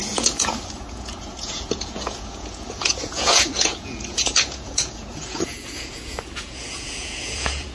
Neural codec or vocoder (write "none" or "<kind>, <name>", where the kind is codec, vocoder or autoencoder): vocoder, Vocos